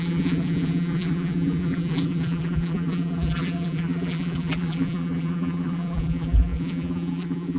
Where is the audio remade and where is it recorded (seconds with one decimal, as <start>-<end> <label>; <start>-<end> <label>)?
0.0-7.6 remade